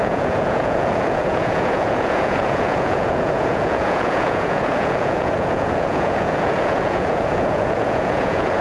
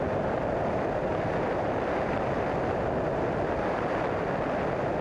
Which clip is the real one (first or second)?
second